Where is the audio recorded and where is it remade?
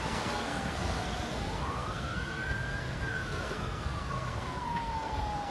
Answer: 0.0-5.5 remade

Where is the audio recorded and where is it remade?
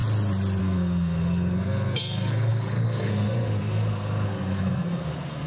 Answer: 0.0-0.6 recorded; 0.6-5.5 remade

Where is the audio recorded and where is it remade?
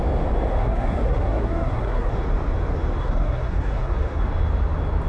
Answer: 0.0-0.6 recorded; 0.6-2.1 remade; 2.1-3.0 recorded; 3.0-4.2 remade; 4.2-5.1 recorded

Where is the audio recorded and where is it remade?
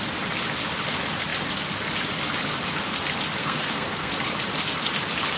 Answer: 0.0-3.4 recorded; 3.4-4.1 remade; 4.1-5.4 recorded